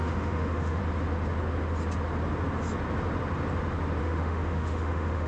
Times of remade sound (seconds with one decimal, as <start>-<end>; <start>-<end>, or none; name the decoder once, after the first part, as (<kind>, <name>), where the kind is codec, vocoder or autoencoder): 0.0-0.8 (autoencoder, DAC-VAE); 4.0-5.3